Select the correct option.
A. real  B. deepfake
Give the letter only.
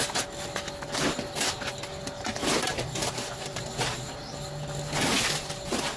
A